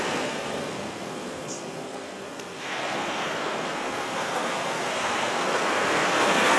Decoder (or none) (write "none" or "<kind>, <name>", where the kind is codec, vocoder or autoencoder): codec, SNAC